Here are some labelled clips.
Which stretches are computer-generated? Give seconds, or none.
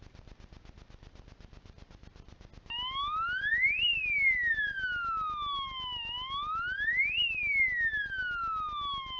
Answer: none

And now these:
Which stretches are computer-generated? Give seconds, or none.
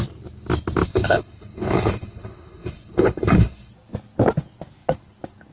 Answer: 0.9-3.7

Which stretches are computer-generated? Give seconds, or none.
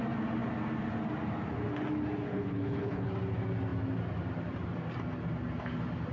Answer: 2.3-3.1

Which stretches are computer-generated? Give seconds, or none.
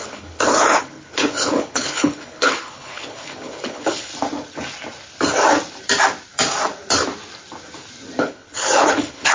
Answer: 0.0-4.1; 8.2-9.3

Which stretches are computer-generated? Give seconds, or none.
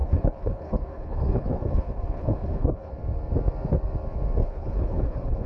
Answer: 0.0-2.9; 4.4-5.5